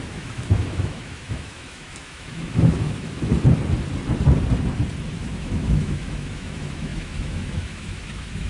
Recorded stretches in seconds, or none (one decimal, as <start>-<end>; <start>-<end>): 3.3-5.2